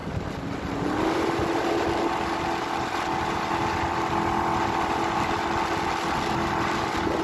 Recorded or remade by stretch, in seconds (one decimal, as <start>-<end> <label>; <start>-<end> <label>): 0.0-7.2 recorded